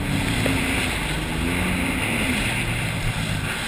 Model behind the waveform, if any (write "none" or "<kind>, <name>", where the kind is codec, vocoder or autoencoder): none